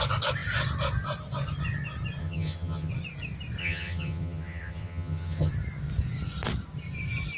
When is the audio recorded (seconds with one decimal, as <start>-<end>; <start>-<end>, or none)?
0.0-2.2; 2.9-3.6; 5.5-7.4